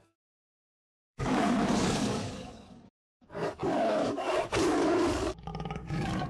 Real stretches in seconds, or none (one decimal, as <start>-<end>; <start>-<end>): none